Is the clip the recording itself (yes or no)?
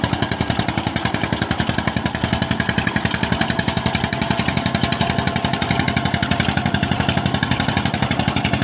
yes